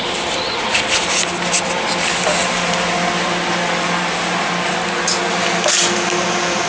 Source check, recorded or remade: recorded